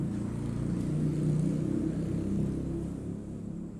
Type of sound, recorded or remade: recorded